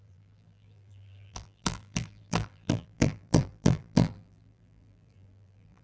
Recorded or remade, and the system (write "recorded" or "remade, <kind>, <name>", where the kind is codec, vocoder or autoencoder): remade, vocoder, BigVGAN v2